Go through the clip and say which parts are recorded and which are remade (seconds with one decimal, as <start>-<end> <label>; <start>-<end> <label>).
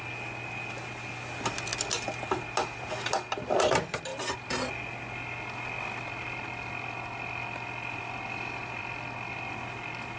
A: 0.0-10.2 recorded